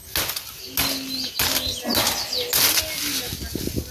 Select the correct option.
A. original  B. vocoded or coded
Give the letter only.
A